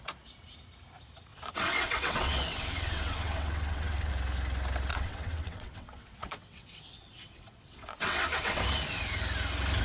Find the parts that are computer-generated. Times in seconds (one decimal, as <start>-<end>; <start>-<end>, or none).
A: 1.3-4.1; 4.9-8.6